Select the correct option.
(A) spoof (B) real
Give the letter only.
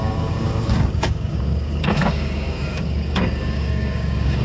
A